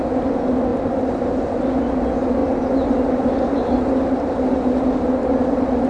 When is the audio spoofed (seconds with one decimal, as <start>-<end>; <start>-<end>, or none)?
none